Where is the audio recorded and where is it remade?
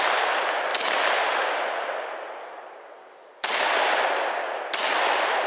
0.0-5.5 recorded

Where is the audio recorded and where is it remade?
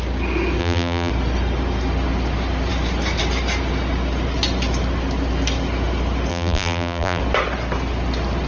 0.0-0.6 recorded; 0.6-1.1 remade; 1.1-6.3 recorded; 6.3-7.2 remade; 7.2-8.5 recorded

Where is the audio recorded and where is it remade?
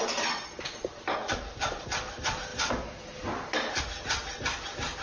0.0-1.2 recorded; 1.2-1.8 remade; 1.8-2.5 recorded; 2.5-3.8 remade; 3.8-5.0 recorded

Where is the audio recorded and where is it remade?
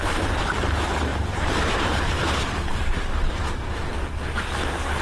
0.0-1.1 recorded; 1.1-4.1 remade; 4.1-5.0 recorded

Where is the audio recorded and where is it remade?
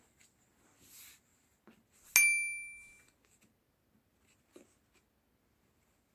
0.0-6.1 recorded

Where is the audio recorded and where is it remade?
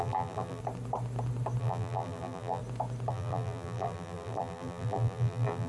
0.0-0.6 remade; 0.6-1.6 recorded; 1.6-2.6 remade; 2.6-3.1 recorded; 3.1-5.7 remade